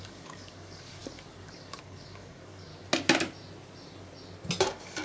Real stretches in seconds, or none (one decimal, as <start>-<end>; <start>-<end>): 2.7-4.6